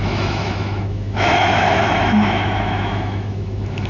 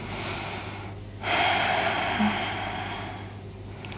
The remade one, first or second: first